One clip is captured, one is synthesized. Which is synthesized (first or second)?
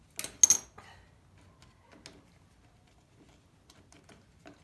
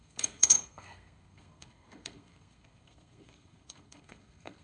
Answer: second